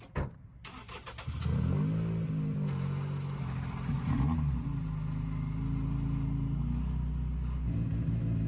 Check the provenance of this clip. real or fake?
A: real